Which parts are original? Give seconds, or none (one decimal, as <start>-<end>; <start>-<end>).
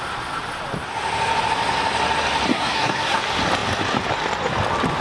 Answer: 0.0-2.5; 3.2-5.0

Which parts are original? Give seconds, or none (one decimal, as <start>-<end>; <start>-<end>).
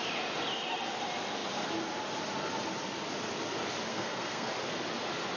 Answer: 0.0-3.9; 4.5-5.4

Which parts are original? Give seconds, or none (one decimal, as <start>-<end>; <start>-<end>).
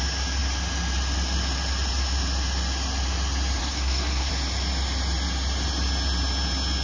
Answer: 0.0-3.6; 4.3-6.8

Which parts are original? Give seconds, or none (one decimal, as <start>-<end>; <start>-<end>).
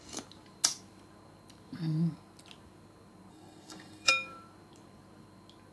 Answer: 0.0-3.3; 4.1-5.7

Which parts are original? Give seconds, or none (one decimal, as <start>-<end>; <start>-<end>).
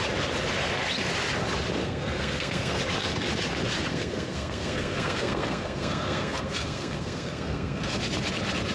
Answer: 0.0-1.8; 2.8-3.9; 8.0-8.7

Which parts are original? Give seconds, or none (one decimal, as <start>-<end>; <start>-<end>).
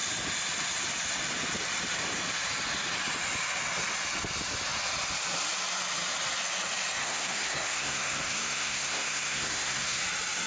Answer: 0.0-7.0; 10.0-10.5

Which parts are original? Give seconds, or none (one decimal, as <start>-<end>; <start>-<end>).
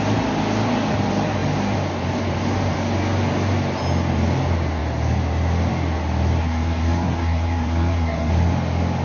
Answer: 0.0-6.4; 8.3-9.0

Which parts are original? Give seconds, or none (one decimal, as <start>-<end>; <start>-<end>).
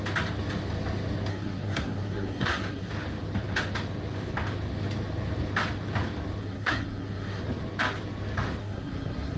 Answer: 0.0-1.3; 2.9-6.4; 7.4-8.6